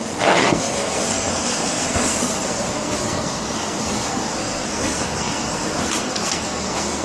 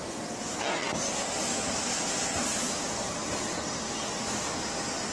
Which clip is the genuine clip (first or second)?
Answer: second